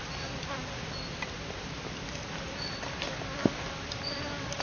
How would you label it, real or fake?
real